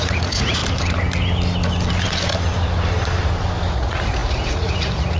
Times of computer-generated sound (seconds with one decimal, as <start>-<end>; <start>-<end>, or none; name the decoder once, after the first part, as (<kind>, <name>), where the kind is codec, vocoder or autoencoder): 0.0-0.6 (vocoder, Vocos); 3.7-5.2